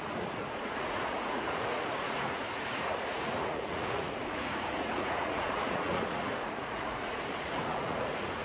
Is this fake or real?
fake